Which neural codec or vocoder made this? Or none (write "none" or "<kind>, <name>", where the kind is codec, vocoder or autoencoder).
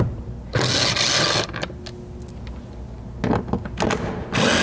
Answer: none